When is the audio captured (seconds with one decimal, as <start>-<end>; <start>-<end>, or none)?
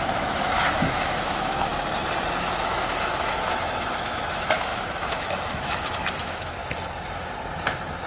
1.7-2.4; 6.6-8.1